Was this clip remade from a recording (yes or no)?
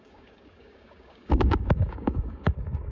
yes